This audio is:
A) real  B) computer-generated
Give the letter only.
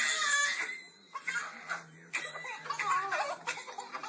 A